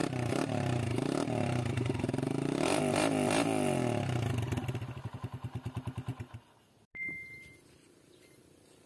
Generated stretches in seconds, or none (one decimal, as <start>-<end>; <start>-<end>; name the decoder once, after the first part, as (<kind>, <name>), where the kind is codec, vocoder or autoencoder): 0.0-2.8 (vocoder, BigVGAN v2)